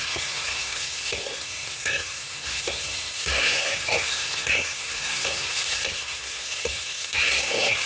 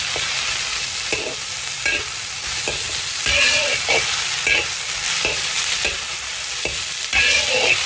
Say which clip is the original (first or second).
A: second